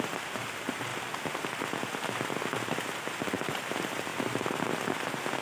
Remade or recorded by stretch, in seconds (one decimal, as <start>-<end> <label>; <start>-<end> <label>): 0.0-5.4 recorded